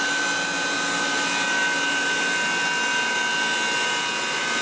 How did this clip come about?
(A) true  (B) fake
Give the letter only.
A